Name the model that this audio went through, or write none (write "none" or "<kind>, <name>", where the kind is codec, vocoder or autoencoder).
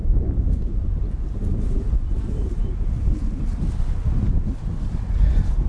none